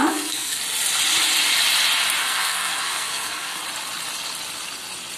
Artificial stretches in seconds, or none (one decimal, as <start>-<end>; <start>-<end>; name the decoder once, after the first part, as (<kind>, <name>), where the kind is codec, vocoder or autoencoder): 0.0-0.6 (codec, SNAC); 2.2-3.6